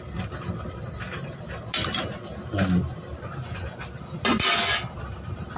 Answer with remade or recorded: recorded